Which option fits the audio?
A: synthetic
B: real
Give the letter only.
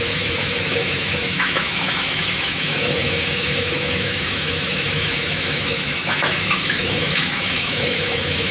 A